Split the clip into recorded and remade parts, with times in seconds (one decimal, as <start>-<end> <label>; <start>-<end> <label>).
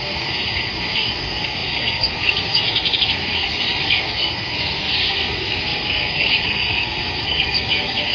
0.0-8.1 remade